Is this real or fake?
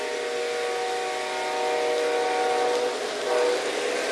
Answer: real